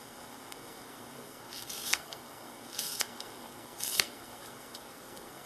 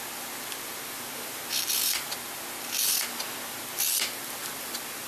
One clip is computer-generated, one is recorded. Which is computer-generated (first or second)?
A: first